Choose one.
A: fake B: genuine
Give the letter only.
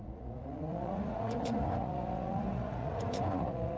A